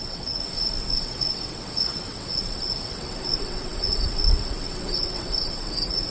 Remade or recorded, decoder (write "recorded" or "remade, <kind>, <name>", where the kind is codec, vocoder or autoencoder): remade, vocoder, WaveNeXt